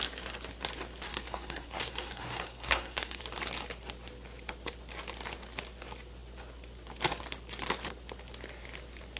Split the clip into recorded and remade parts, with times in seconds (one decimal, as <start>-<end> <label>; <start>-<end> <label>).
0.0-1.1 recorded; 1.1-3.2 remade; 3.2-9.2 recorded